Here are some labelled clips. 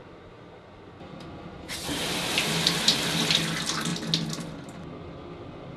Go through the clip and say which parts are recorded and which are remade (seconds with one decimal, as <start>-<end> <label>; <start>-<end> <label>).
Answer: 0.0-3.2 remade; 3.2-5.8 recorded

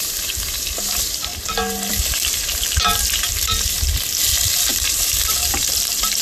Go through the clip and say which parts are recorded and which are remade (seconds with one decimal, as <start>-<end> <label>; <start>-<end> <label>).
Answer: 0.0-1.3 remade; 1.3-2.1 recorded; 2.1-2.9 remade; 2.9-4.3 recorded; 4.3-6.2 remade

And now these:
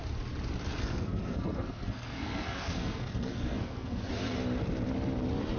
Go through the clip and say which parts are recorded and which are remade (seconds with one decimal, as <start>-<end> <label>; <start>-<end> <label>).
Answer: 0.0-0.7 recorded; 0.7-4.1 remade; 4.1-5.6 recorded

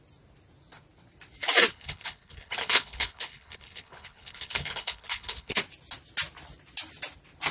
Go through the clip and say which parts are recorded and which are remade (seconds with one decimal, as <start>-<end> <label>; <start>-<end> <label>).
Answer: 0.0-1.7 recorded; 1.7-5.6 remade; 5.6-7.5 recorded

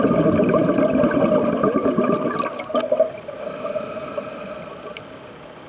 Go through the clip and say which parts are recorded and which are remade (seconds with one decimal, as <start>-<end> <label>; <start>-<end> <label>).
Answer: 0.0-5.7 recorded